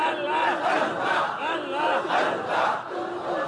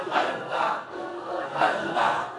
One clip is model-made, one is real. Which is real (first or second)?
first